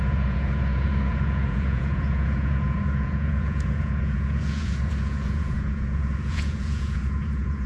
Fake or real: fake